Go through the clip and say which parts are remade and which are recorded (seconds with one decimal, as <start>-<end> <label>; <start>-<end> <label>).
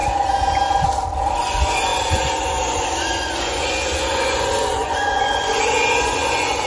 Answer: 0.0-1.4 recorded; 1.4-6.7 remade